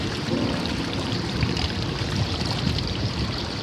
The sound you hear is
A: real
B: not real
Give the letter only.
B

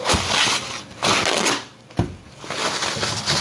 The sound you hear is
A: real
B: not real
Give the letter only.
A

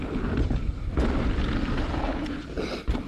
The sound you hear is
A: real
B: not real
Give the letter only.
A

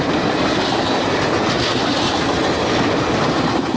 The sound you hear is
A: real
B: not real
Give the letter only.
A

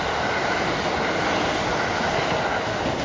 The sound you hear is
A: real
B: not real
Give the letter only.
A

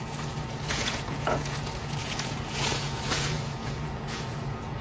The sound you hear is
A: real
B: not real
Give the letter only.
B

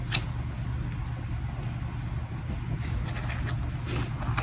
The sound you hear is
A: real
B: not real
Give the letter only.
A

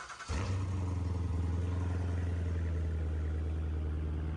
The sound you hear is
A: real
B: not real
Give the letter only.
A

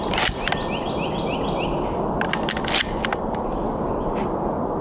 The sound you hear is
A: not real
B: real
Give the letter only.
B